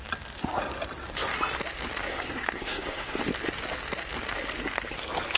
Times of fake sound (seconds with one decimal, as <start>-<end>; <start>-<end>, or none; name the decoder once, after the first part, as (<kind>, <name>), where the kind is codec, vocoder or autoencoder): 2.1-3.2 (codec, SNAC)

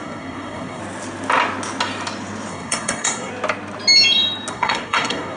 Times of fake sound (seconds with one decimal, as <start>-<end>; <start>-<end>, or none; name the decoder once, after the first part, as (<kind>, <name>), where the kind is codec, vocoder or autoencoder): 0.0-0.8 (codec, SNAC); 2.5-3.3; 4.5-5.4

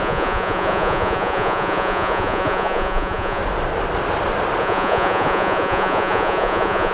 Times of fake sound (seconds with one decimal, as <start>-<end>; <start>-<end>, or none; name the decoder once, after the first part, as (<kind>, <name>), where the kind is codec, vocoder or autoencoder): 0.0-3.4 (vocoder, Vocos); 4.6-6.9

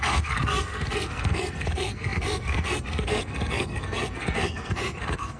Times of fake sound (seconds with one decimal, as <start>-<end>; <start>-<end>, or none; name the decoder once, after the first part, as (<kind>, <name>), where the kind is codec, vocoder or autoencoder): 0.0-5.4 (codec, SNAC)